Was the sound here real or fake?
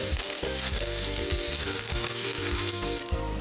fake